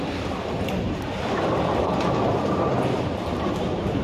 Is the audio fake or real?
real